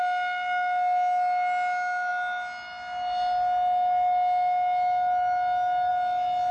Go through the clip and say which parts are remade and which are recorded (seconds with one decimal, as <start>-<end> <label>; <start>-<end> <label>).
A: 0.0-6.5 recorded